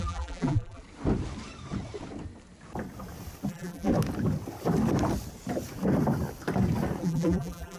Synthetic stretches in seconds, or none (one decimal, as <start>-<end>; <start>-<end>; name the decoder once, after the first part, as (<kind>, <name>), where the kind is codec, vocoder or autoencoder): 0.0-0.8 (vocoder, BigVGAN v2); 3.5-3.9; 7.0-7.8

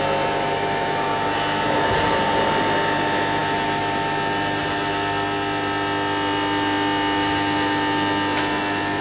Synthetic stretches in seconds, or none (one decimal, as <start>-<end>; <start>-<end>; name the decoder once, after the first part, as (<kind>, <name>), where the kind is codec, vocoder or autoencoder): none

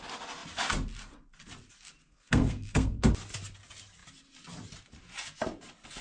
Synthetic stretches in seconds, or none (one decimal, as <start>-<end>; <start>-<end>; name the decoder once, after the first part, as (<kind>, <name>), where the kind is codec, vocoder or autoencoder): 2.0-3.1 (codec, SNAC)

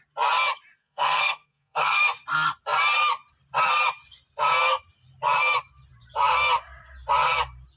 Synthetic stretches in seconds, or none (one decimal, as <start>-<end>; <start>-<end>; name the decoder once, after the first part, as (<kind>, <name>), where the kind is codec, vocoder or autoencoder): 0.8-2.0 (codec, SNAC)

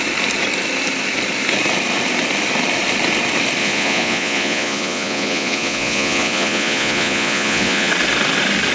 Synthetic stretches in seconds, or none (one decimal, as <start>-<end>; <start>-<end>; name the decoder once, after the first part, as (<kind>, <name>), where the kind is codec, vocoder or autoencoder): 3.6-7.9 (vocoder, Vocos)

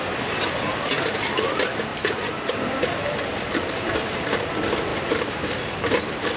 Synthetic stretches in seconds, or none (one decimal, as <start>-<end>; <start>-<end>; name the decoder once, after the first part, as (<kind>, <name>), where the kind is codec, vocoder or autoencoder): 1.9-4.5 (vocoder, BigVGAN v2); 4.9-6.0

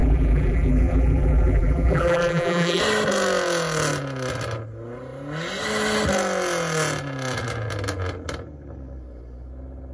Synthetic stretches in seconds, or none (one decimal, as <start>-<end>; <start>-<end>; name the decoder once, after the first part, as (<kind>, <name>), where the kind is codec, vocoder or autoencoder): 0.0-2.8 (vocoder, BigVGAN v2)